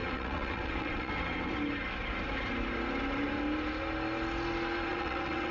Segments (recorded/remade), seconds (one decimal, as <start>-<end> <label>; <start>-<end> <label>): 0.0-1.5 remade; 1.5-4.9 recorded; 4.9-5.5 remade

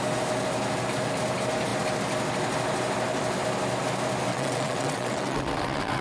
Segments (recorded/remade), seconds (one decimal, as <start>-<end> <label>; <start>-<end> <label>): 0.0-4.3 recorded; 4.3-6.0 remade

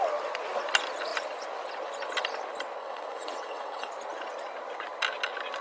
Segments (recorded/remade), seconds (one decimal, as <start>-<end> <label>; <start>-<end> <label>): 0.0-2.8 recorded; 2.8-3.9 remade; 3.9-5.6 recorded

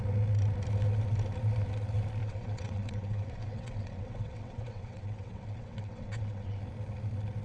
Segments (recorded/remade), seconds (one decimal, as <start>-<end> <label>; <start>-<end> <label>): 0.0-2.2 recorded; 2.2-6.6 remade; 6.6-7.4 recorded

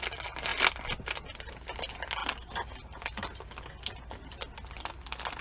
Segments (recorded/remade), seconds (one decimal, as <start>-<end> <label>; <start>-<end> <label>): 0.0-5.4 recorded

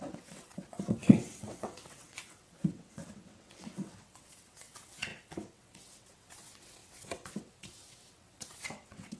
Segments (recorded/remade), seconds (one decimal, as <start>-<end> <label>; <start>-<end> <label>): 0.0-9.2 remade

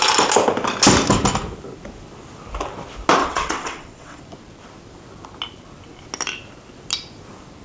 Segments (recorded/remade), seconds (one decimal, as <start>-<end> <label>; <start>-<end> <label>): 0.0-3.2 recorded; 3.2-4.2 remade; 4.2-7.6 recorded

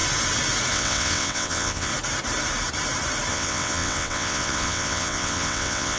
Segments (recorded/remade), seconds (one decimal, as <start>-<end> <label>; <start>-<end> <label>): 0.0-0.7 recorded; 0.7-1.9 remade; 1.9-3.3 recorded; 3.3-6.0 remade